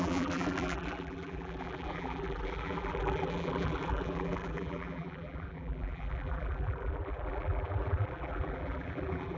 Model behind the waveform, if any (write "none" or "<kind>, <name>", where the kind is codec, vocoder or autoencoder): vocoder, BigVGAN v2